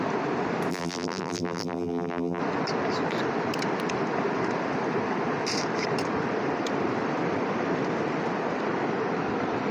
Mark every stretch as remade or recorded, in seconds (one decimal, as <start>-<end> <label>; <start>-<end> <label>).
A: 0.0-0.7 recorded; 0.7-2.4 remade; 2.4-9.7 recorded